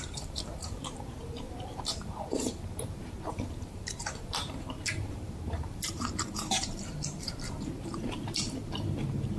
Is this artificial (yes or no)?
yes